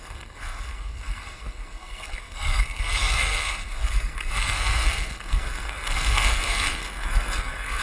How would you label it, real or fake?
fake